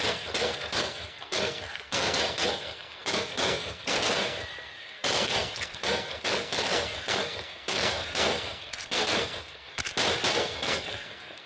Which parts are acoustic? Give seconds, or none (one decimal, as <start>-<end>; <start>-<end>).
9.8-10.3